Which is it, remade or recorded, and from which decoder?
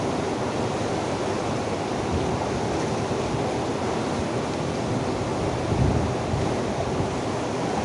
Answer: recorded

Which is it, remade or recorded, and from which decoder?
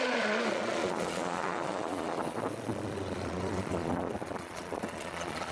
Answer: remade, vocoder, Vocos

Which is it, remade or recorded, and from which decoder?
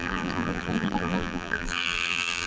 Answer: remade, vocoder, BigVGAN v2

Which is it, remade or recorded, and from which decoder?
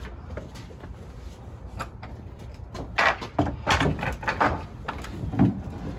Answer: recorded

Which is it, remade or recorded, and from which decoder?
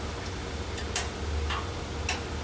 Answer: recorded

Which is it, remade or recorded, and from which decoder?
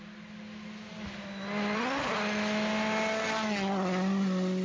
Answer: recorded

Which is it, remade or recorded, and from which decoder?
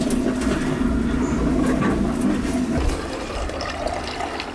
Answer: recorded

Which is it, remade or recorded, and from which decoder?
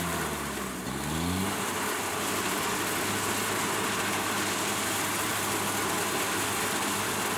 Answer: recorded